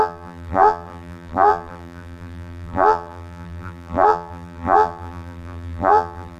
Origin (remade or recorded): remade